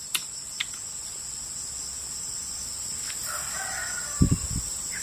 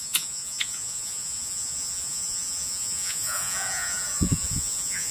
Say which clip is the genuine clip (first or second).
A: first